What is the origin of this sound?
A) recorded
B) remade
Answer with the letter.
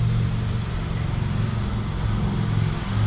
A